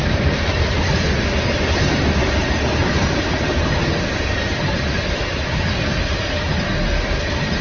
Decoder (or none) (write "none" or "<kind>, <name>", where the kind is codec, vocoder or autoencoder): none